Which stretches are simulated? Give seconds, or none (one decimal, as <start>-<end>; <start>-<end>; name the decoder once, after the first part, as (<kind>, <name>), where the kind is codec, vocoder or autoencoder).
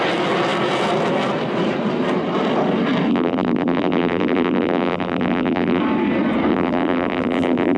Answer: 3.1-5.8 (vocoder, BigVGAN v2); 6.5-7.8